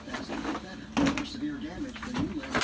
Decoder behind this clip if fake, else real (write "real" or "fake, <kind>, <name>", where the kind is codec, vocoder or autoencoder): real